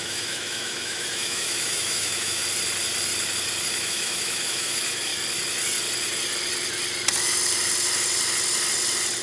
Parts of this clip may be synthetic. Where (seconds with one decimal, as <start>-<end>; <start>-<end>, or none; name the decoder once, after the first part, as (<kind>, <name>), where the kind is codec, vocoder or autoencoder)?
0.0-2.4 (autoencoder, DAC-VAE); 3.7-5.1